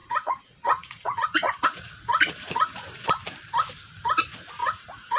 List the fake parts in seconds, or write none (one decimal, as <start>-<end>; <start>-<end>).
0.0-3.1; 4.6-5.2